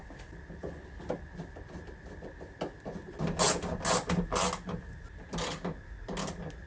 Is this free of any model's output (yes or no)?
yes